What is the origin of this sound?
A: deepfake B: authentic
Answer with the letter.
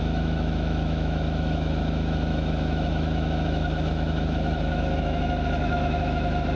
A